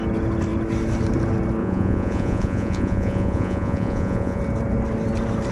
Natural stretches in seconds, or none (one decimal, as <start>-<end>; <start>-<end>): 0.0-1.6; 4.4-5.5